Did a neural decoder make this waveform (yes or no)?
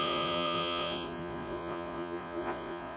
yes